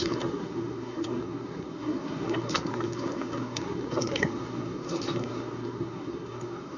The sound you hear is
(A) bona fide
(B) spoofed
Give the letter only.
B